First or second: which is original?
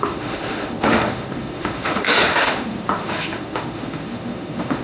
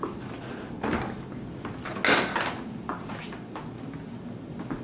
second